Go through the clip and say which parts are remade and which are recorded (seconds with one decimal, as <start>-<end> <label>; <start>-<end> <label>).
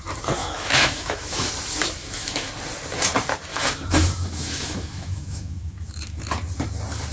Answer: 0.0-0.4 recorded; 0.4-1.5 remade; 1.5-2.0 recorded; 2.0-2.5 remade; 2.5-3.5 recorded; 3.5-6.2 remade; 6.2-7.1 recorded